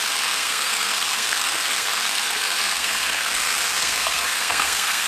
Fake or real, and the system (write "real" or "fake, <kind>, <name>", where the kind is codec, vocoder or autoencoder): fake, codec, SNAC